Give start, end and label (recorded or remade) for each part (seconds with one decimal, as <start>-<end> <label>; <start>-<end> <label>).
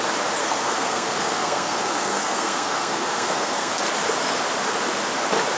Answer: 0.0-0.4 recorded; 0.4-3.8 remade; 3.8-5.6 recorded